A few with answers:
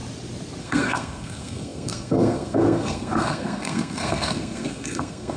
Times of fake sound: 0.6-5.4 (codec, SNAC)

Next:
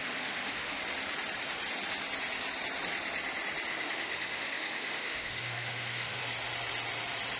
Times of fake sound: 0.0-0.8 (autoencoder, DAC-VAE); 3.7-6.2

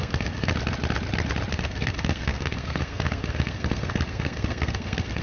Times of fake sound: 0.0-0.5 (codec, SNAC); 1.5-5.2

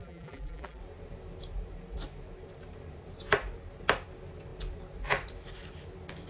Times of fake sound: 0.0-0.8 (vocoder, BigVGAN v2)

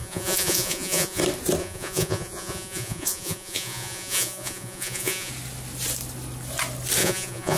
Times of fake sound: 0.0-1.2 (vocoder, Vocos); 1.6-5.3; 7.0-7.6

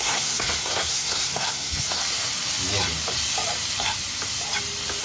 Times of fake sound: 0.0-2.0 (codec, SNAC)